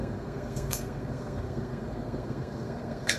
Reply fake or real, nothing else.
fake